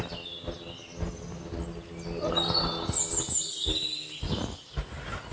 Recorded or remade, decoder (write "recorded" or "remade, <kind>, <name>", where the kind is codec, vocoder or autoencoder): recorded